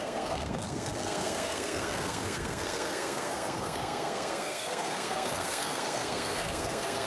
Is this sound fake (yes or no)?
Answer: yes